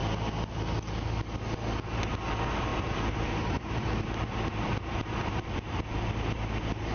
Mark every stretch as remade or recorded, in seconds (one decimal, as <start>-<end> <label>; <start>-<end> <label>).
0.0-2.7 recorded; 2.7-5.4 remade; 5.4-6.9 recorded